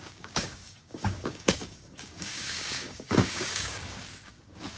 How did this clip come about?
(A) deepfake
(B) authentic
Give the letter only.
A